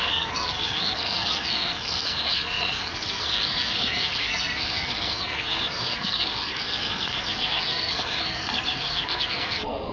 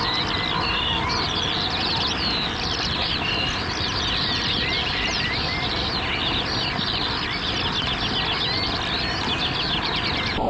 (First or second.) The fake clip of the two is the first